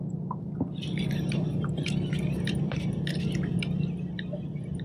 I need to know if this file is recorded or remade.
recorded